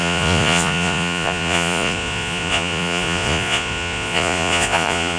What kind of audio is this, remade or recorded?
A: remade